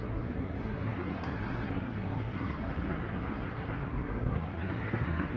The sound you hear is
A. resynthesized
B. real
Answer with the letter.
A